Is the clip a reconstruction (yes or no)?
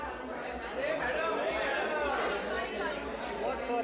no